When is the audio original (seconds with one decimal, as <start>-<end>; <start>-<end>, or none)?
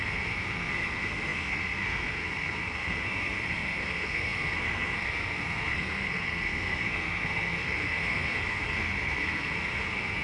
none